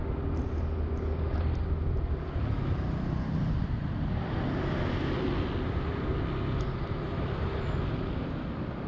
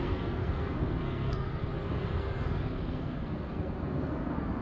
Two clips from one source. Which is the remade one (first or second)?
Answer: second